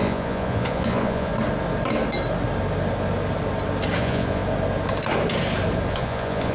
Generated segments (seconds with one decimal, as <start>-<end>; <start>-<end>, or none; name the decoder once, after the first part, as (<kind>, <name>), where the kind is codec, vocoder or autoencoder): 0.0-1.3 (vocoder, Vocos); 4.0-4.4; 5.9-6.5